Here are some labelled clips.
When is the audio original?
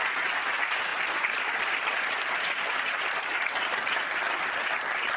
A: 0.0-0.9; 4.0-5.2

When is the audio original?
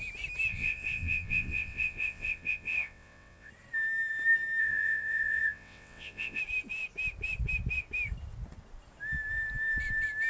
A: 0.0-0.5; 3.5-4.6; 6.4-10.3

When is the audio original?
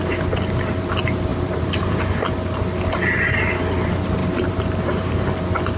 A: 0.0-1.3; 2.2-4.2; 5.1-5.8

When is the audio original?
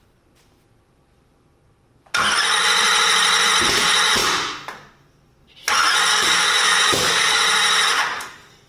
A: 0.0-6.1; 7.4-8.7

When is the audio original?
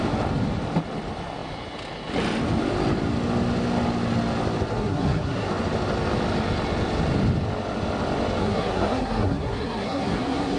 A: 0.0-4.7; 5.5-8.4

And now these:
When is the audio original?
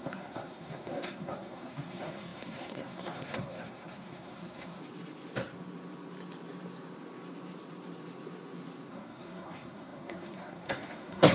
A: 4.8-8.9